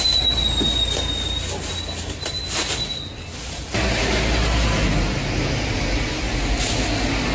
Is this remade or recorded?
recorded